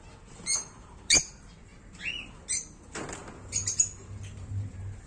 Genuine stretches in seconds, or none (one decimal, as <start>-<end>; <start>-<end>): 1.7-5.1

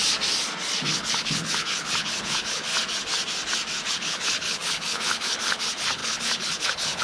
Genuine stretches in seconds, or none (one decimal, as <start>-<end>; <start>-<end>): 0.0-0.8; 2.7-3.9

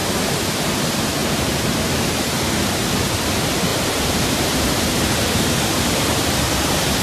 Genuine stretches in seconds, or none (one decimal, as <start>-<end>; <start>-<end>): 0.0-1.2; 2.5-3.7; 6.5-7.0

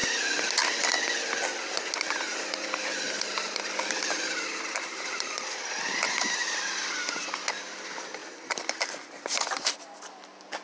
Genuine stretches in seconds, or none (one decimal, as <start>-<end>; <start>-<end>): 0.0-2.3; 7.2-8.2; 9.8-10.6

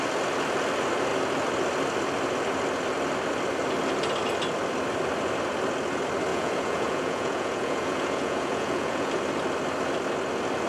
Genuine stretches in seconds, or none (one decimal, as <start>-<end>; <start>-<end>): 0.0-6.3; 9.1-10.7

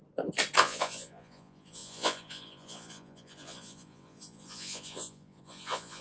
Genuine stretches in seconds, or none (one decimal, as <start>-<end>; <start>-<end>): 0.0-0.6